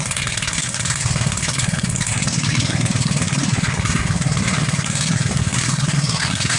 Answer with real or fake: fake